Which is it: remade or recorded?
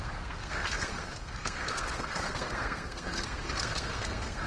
remade